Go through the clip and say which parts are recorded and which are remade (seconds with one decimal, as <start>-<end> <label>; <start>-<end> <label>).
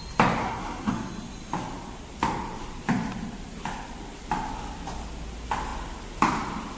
0.0-0.4 recorded; 0.4-0.9 remade; 0.9-6.8 recorded